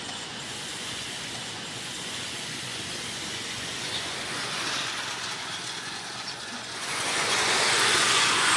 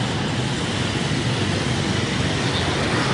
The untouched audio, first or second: second